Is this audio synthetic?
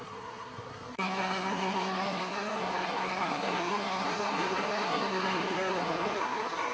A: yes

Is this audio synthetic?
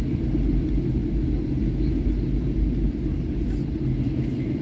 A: no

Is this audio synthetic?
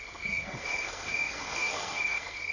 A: yes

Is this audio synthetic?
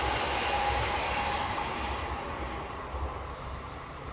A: no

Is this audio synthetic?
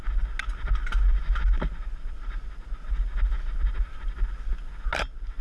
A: no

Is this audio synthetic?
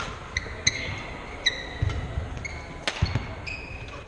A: no